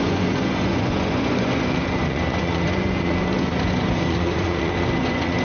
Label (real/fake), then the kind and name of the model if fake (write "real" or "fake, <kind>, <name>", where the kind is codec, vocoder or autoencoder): fake, vocoder, Vocos